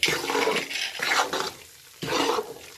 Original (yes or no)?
no